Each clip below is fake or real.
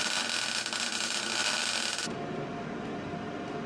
real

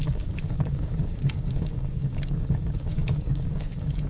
fake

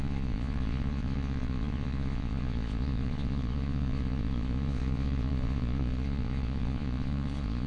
fake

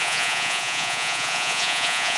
fake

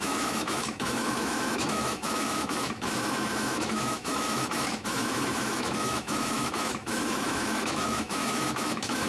fake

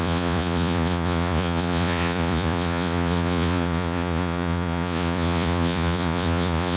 fake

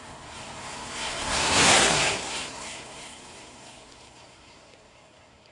fake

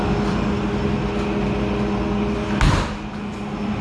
real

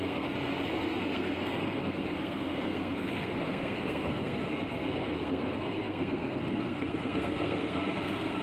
fake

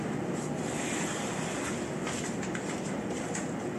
real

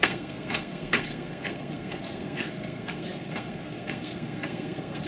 fake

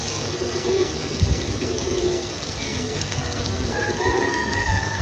fake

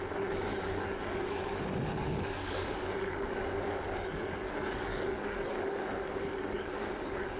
fake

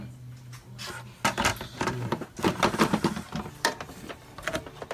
real